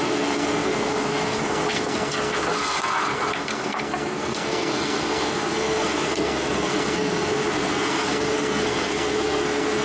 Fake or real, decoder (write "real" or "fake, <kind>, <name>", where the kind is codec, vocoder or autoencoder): fake, codec, SNAC